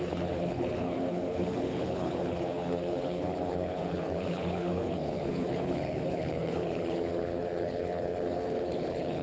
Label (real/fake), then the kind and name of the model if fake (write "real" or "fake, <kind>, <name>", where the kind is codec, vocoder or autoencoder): fake, codec, HILCodec